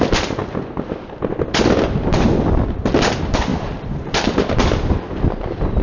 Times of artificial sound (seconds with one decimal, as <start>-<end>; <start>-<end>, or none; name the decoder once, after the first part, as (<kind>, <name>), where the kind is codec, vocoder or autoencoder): 3.5-4.5 (vocoder, BigVGAN v2)